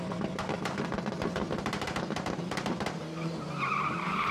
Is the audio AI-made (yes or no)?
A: yes